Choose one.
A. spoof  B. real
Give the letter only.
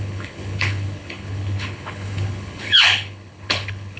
A